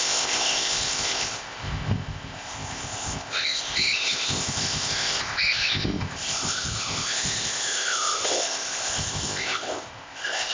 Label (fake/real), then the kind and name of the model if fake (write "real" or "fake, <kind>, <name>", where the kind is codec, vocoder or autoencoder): fake, codec, ZipCodec